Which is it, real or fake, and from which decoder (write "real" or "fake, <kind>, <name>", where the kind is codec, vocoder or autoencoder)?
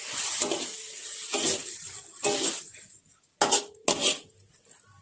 real